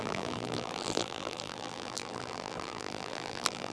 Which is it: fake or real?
fake